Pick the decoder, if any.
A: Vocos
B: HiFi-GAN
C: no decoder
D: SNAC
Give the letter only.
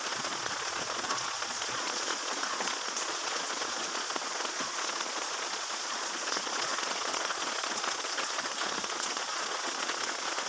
A